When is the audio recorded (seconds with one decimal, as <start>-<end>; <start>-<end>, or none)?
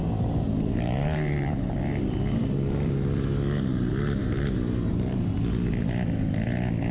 1.8-4.2; 5.3-6.9